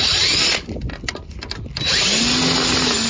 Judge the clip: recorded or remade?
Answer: recorded